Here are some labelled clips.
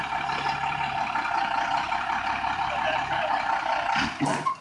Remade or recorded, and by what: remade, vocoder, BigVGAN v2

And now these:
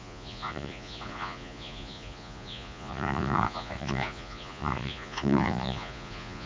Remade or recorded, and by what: remade, vocoder, Vocos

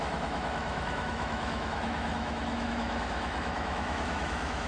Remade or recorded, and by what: remade, autoencoder, DAC-VAE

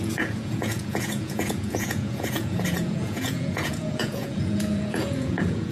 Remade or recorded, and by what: remade, vocoder, Vocos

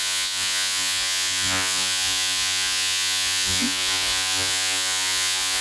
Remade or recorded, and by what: remade, vocoder, Vocos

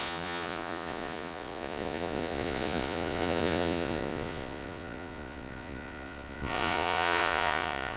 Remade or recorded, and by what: remade, vocoder, Vocos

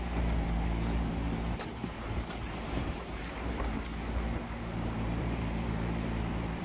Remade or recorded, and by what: remade, vocoder, BigVGAN v2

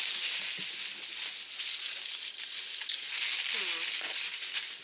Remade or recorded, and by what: recorded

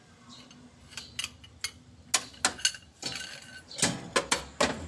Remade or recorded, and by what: recorded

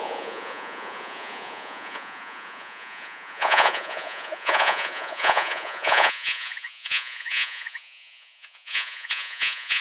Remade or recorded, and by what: remade, vocoder, Vocos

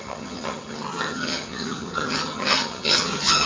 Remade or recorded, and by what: remade, vocoder, HiFi-GAN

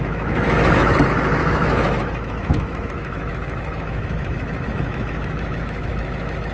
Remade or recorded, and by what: remade, autoencoder, DAC-VAE